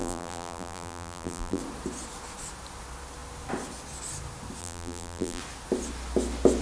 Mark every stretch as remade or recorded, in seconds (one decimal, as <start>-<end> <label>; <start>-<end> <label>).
0.0-1.6 remade; 1.6-4.6 recorded; 4.6-5.4 remade; 5.4-6.6 recorded